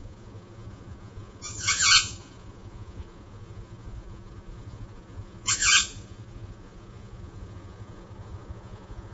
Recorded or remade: remade